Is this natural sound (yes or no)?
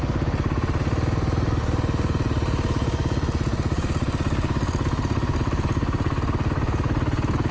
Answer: yes